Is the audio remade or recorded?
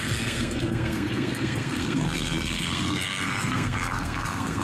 remade